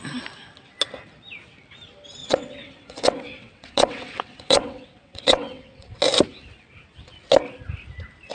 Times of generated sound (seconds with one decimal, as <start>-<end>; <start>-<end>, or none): 2.2-6.0